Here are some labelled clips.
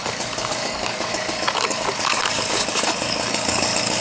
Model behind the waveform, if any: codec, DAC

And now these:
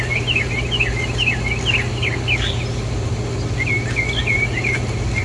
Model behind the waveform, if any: none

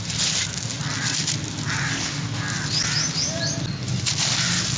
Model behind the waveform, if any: none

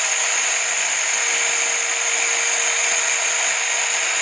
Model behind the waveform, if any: none